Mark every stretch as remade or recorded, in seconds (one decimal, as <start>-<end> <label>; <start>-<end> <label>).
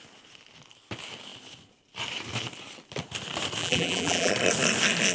0.0-3.6 recorded; 3.6-4.3 remade; 4.3-5.1 recorded